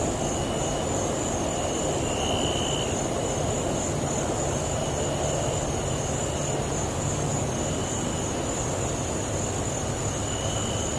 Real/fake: real